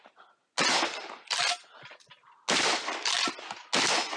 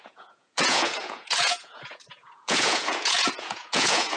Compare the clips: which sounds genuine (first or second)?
first